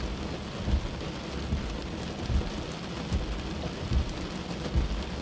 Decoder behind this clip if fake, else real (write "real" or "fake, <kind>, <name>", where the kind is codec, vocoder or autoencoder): real